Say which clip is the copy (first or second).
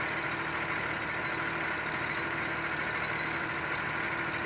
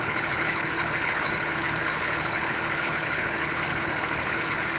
second